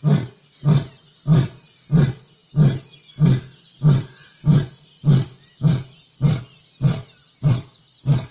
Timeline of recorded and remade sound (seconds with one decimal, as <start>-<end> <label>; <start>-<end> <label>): 0.0-8.3 recorded